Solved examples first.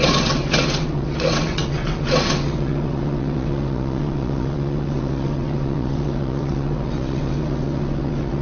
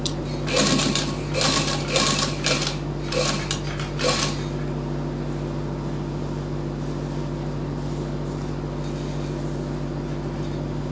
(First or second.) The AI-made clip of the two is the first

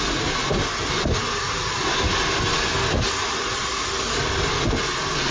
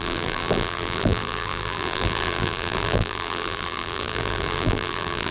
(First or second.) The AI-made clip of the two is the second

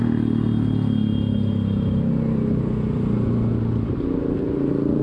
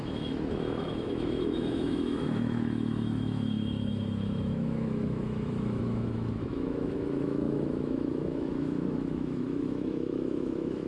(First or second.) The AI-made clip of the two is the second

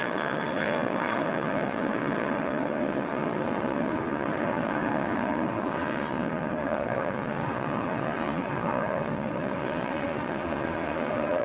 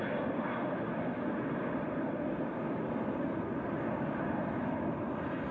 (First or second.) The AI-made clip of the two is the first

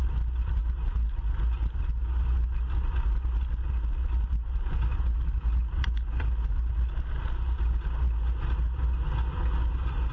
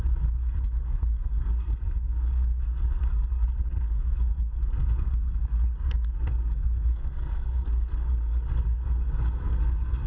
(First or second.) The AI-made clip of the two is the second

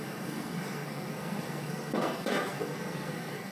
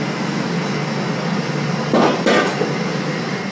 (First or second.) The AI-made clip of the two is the first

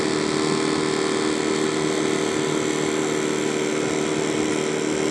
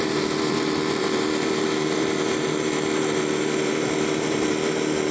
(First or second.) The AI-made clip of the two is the second